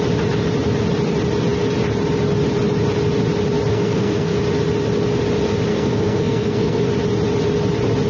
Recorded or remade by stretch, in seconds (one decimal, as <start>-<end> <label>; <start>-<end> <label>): 0.0-3.7 recorded; 3.7-4.4 remade; 4.4-5.7 recorded; 5.7-6.9 remade; 6.9-8.1 recorded